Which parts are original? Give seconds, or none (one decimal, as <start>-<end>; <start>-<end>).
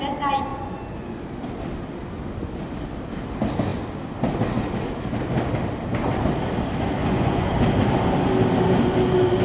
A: 0.0-0.5; 1.2-7.0; 7.5-9.4